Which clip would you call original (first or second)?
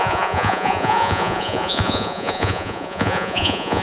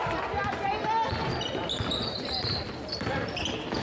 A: second